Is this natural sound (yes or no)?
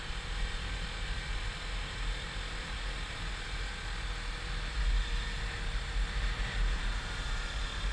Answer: yes